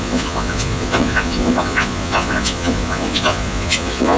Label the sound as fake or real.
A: fake